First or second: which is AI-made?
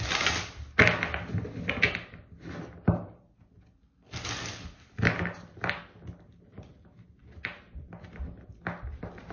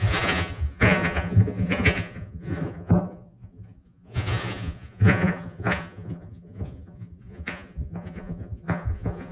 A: second